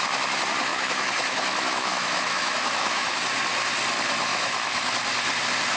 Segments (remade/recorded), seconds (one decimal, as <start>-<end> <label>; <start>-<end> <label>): 0.0-0.7 recorded; 0.7-3.2 remade; 3.2-4.3 recorded; 4.3-4.9 remade; 4.9-5.8 recorded